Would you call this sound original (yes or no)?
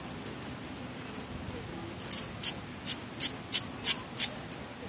yes